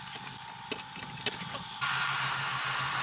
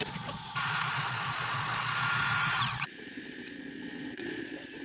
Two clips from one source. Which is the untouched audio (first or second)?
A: first